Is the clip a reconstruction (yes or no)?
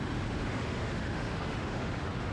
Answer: yes